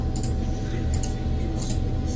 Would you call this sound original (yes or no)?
yes